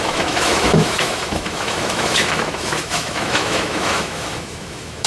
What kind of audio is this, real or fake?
fake